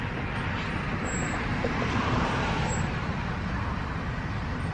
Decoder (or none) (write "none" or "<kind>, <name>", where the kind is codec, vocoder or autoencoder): none